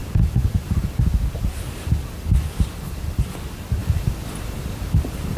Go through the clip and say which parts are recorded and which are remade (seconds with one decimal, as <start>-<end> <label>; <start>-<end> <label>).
0.0-5.4 recorded